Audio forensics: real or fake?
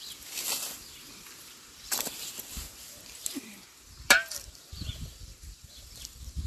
fake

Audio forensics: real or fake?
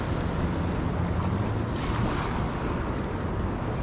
real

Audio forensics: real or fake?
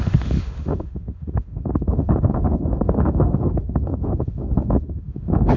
fake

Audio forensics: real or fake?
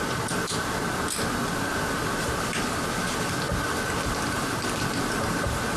real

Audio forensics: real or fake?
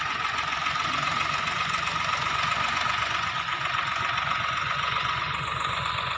fake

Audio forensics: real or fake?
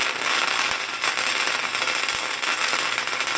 real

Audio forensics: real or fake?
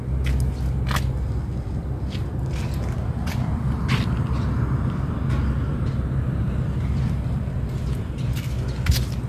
real